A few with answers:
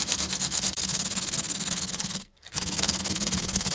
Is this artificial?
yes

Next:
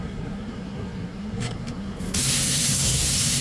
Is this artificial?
yes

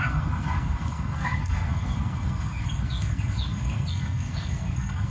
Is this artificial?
yes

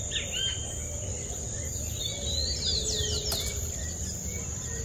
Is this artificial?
no